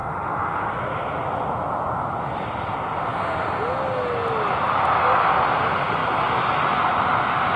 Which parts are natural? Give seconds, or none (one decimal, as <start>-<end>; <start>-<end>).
0.7-7.6